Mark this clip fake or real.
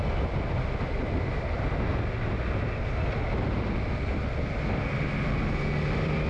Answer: real